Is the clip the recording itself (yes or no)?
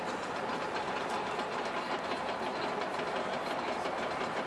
yes